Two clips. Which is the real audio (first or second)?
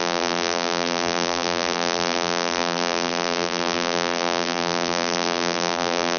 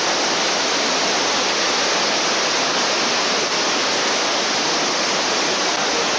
second